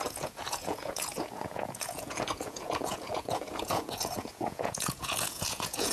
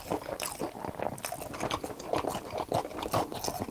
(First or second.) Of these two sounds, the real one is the second